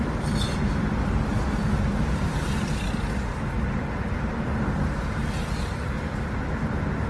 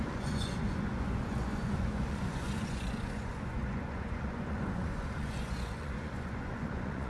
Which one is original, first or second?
first